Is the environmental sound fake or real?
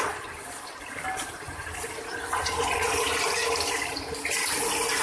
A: real